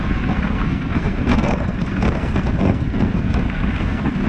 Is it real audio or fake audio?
fake